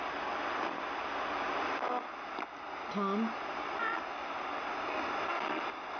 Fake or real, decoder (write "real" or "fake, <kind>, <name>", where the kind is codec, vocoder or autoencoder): real